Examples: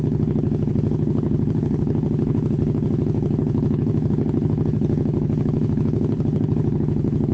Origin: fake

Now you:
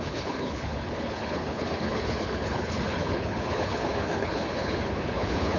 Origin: fake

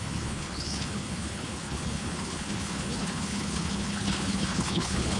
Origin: fake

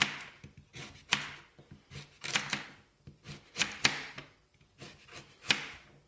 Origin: real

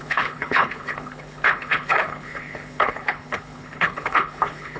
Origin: fake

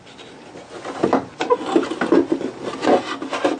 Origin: real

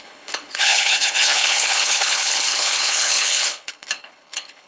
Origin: fake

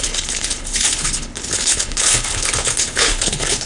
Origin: fake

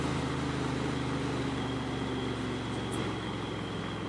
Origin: real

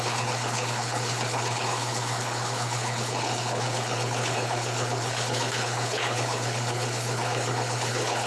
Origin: fake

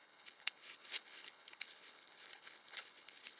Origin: fake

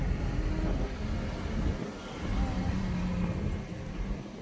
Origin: real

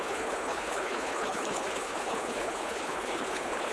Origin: fake